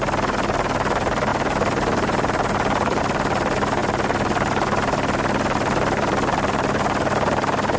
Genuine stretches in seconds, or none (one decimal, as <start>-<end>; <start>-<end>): 0.0-1.3; 3.0-7.8